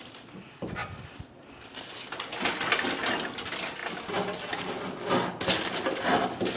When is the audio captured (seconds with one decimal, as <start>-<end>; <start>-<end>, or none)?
0.0-6.6